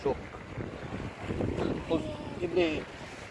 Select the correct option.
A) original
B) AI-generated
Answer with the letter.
A